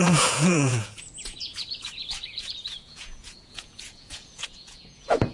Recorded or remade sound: remade